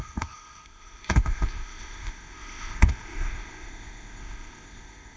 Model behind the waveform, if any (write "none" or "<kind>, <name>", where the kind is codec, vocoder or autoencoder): codec, ZipCodec